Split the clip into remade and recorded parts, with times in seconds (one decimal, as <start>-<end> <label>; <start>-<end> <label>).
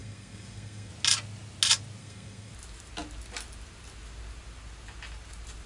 0.0-0.9 remade; 0.9-2.0 recorded; 2.0-2.5 remade; 2.5-5.7 recorded